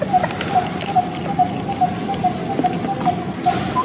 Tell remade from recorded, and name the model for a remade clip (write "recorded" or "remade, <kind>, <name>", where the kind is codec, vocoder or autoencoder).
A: recorded